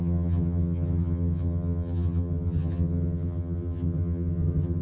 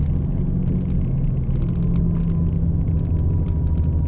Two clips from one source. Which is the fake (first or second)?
first